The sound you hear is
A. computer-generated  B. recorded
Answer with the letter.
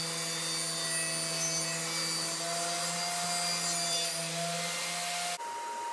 B